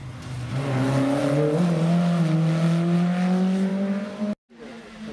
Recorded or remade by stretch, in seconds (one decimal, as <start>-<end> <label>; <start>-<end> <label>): 0.0-5.1 recorded